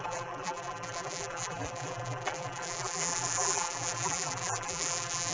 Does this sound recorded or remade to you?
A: remade